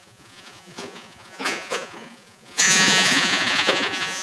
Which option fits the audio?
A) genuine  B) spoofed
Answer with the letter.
B